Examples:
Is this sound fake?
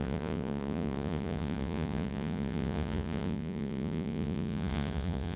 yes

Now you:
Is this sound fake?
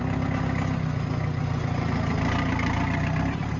no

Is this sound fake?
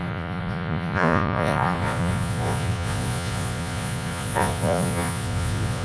yes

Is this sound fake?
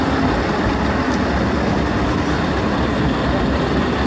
no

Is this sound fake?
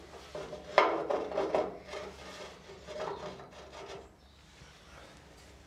no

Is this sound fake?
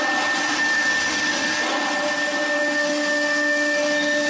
no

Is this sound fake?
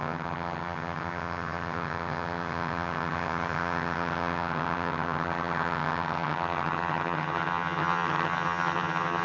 yes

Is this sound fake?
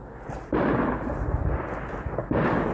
no